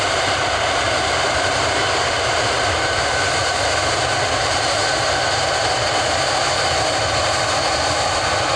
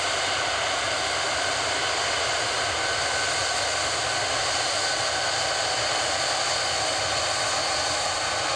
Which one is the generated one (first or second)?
first